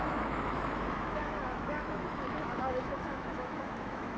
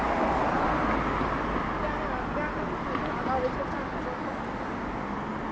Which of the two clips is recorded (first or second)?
second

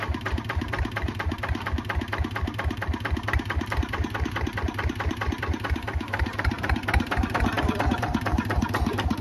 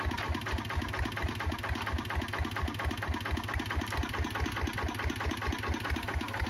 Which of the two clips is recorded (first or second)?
second